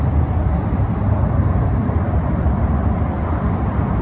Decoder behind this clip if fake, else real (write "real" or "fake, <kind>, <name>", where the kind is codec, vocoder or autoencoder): fake, vocoder, BigVGAN v2